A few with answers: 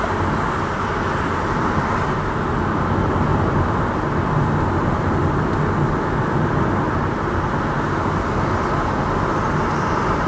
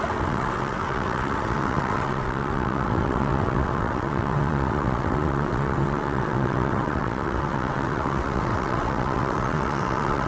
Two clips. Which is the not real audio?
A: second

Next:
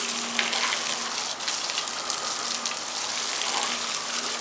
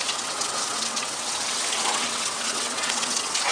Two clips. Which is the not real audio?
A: second